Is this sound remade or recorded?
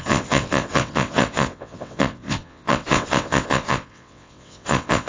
remade